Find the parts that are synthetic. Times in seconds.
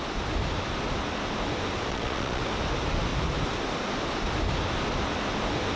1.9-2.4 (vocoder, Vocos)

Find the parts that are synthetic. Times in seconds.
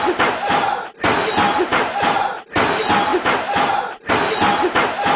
1.7-2.3 (vocoder, BigVGAN v2); 3.1-4.1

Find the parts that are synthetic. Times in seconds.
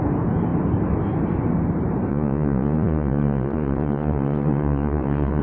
2.1-5.4 (vocoder, Vocos)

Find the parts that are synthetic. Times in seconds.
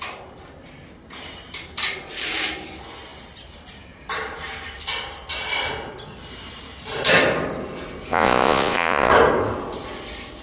8.1-9.1 (vocoder, Vocos)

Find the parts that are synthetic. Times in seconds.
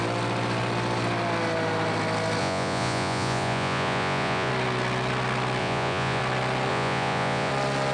2.4-4.5 (vocoder, Vocos); 5.6-6.2; 6.7-7.5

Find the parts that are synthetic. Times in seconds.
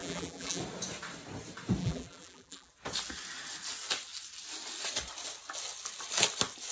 0.0-0.6 (vocoder, BigVGAN v2); 1.8-2.7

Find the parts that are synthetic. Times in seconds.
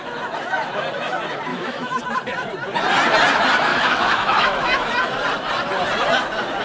1.5-2.0 (autoencoder, DAC-VAE); 3.7-4.9